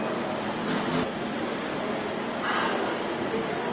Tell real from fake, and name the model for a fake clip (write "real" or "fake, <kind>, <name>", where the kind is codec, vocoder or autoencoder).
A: real